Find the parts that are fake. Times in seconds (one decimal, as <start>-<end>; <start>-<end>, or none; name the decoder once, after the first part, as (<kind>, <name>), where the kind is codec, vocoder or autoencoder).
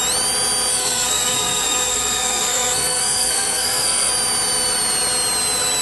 0.7-4.1 (codec, SNAC)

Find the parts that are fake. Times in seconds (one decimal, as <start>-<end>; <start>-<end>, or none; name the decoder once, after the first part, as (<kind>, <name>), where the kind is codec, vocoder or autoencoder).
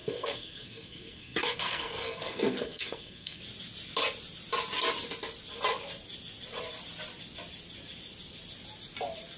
0.0-3.4 (codec, SNAC)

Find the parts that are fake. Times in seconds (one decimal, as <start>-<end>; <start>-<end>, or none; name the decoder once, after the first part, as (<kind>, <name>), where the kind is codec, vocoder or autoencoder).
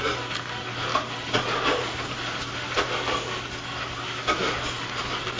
none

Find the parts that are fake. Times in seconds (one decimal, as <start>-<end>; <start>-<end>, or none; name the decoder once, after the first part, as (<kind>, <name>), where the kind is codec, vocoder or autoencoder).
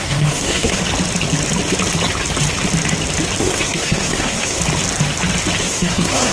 0.0-0.8 (codec, SNAC); 3.4-4.6; 5.6-6.3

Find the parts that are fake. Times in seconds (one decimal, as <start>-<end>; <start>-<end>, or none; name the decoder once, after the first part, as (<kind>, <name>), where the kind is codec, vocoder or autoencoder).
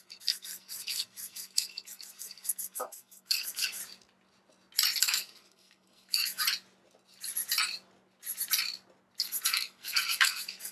0.0-3.8 (codec, SNAC); 5.0-6.4; 9.2-10.7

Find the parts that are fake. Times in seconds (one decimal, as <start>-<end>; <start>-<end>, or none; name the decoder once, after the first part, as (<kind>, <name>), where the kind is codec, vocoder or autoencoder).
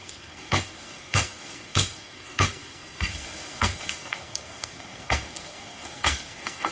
0.0-6.7 (codec, SNAC)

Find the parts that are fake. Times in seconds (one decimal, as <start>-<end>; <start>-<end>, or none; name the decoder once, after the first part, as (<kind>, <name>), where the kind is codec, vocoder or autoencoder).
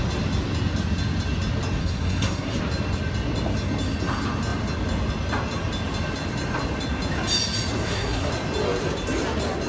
1.8-2.6 (codec, SNAC); 7.8-8.3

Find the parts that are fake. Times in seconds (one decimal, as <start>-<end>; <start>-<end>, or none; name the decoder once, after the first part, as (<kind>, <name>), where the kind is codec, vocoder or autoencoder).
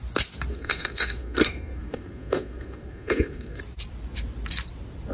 0.5-3.6 (codec, SNAC)